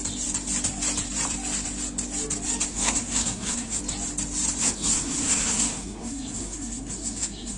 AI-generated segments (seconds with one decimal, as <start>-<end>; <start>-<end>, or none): 2.7-3.8; 4.6-7.6